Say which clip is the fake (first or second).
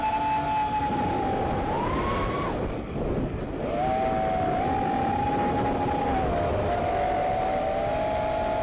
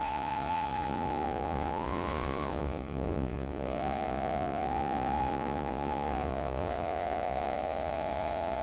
second